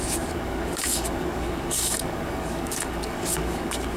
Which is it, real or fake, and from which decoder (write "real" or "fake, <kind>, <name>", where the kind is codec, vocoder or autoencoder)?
fake, codec, DAC